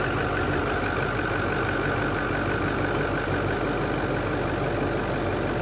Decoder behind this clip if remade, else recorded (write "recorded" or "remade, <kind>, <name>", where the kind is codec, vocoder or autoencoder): recorded